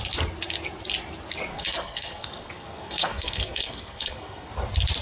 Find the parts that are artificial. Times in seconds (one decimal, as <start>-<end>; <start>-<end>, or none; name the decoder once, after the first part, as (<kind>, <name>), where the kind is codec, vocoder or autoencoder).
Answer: 1.5-4.5 (codec, SNAC)